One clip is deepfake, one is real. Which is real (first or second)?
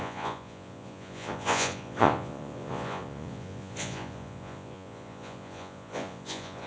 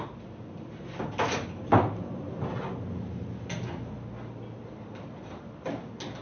second